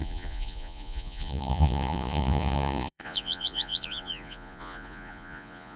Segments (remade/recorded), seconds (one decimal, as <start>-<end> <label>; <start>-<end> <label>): 0.0-5.8 remade